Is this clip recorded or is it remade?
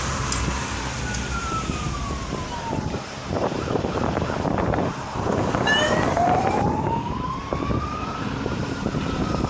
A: remade